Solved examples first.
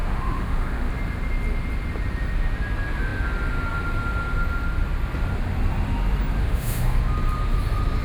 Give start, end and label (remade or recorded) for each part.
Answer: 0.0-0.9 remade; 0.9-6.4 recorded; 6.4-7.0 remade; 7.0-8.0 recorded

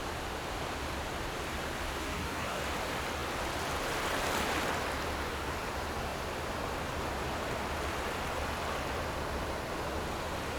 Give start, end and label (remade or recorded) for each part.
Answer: 0.0-2.0 recorded; 2.0-2.6 remade; 2.6-10.6 recorded

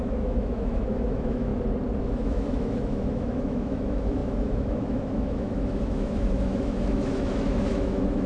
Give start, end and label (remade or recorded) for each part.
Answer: 0.0-1.5 remade; 1.5-2.0 recorded; 2.0-8.3 remade

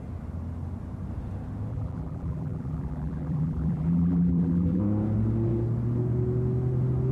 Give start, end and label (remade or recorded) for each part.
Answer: 0.0-1.7 recorded; 1.7-4.8 remade; 4.8-7.1 recorded

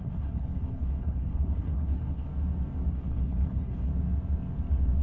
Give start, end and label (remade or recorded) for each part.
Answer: 0.0-2.3 remade; 2.3-2.9 recorded; 2.9-3.9 remade; 3.9-5.0 recorded